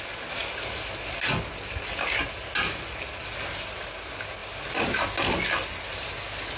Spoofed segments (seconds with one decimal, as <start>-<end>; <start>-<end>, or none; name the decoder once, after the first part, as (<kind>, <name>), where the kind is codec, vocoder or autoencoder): none